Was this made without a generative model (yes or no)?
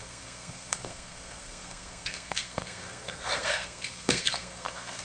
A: no